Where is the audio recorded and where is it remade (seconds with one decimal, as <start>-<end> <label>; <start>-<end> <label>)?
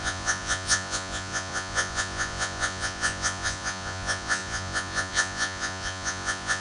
0.0-6.6 remade